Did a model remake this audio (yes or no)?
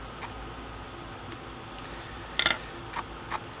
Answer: no